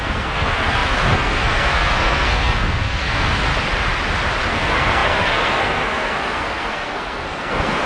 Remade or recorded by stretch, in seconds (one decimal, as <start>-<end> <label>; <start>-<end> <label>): 0.0-3.5 remade; 3.5-4.5 recorded; 4.5-7.9 remade